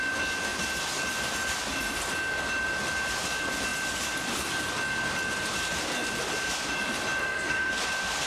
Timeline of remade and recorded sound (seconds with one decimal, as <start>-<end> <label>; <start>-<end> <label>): 0.0-7.2 recorded; 7.2-7.7 remade; 7.7-8.3 recorded